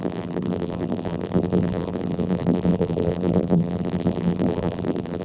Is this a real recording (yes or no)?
no